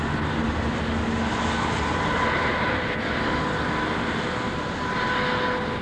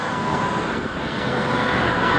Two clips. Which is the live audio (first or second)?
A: first